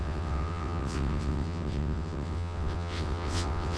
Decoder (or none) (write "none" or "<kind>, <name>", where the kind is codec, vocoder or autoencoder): vocoder, WaveNeXt